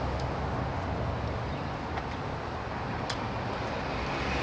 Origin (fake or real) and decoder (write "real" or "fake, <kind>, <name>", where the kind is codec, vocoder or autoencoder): real